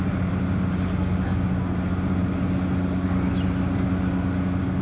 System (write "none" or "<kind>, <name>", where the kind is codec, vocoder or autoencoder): none